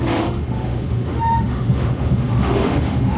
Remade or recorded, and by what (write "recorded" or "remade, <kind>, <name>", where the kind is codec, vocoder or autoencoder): remade, autoencoder, DAC-VAE